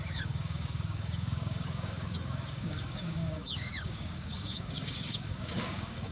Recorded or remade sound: remade